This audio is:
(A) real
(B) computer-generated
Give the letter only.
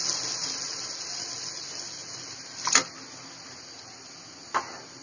A